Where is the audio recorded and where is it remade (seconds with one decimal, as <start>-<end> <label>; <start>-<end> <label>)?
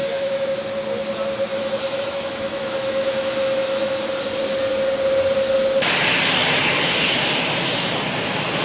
0.0-0.6 remade; 0.6-1.5 recorded; 1.5-4.1 remade; 4.1-8.6 recorded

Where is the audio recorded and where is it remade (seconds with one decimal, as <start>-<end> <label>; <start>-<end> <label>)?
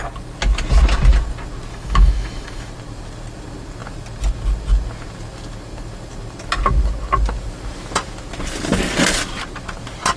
0.0-1.7 recorded; 1.7-2.7 remade; 2.7-10.2 recorded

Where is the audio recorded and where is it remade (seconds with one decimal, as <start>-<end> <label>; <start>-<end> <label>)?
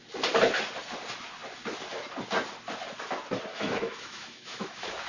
0.0-3.5 recorded; 3.5-5.1 remade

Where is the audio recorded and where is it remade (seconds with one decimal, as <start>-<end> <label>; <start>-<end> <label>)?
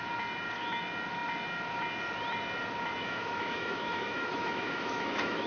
0.0-3.0 recorded; 3.0-5.5 remade